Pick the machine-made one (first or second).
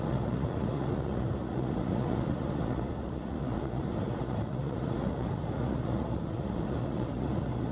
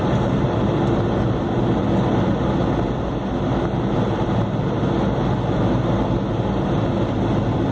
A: first